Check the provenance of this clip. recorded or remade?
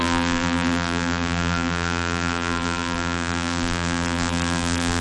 remade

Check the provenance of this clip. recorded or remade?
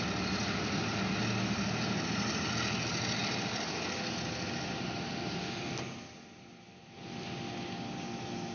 recorded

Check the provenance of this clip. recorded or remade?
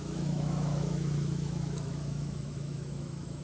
remade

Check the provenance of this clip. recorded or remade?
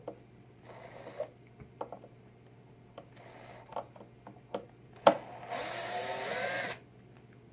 recorded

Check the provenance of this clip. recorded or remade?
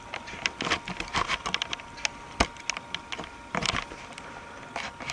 recorded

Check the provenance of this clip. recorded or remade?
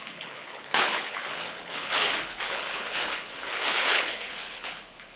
remade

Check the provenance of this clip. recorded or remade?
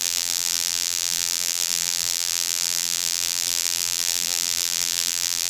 remade